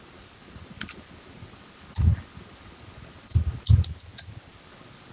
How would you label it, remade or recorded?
recorded